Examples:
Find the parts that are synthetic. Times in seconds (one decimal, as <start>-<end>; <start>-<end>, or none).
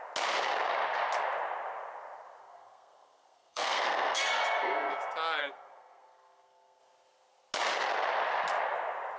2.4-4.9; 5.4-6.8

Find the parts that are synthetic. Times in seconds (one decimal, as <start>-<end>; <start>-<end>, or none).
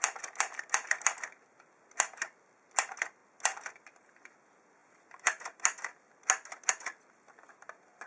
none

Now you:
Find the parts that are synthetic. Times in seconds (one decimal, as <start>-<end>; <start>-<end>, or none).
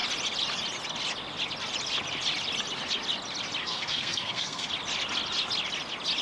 3.6-4.7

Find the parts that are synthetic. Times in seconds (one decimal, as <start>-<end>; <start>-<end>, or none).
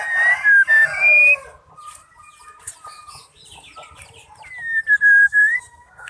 5.2-6.1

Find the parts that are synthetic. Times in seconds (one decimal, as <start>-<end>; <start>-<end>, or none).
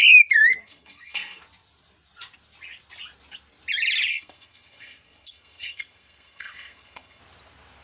0.6-1.4; 4.1-7.2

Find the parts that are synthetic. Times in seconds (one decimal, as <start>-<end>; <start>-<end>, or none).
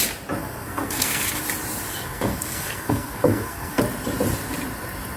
0.4-1.3; 1.9-3.8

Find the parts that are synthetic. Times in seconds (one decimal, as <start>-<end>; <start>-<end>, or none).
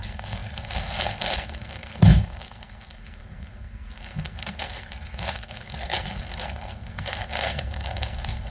0.0-8.5